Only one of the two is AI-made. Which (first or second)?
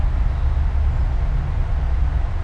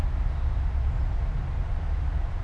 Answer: second